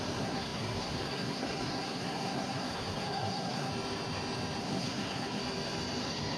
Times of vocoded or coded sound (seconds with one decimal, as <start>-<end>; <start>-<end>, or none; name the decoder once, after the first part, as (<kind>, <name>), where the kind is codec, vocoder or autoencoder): 0.0-3.7 (codec, SNAC); 4.6-5.4; 6.0-6.4

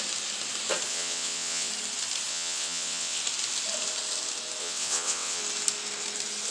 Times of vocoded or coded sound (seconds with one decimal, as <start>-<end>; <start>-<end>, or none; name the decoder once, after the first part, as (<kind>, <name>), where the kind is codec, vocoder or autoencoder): 0.9-1.7 (vocoder, WaveNeXt); 2.3-3.2; 4.6-5.4

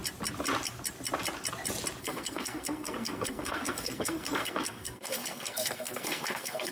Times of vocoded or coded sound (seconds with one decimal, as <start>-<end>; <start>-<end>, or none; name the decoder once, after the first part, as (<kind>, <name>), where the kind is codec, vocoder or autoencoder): 2.0-6.7 (codec, SNAC)